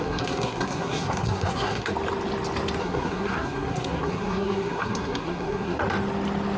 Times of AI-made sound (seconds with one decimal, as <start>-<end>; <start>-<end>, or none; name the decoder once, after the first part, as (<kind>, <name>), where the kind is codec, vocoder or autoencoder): 0.0-1.9 (codec, SNAC); 2.8-5.8